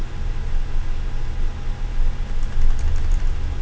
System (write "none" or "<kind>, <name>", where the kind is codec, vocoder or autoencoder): none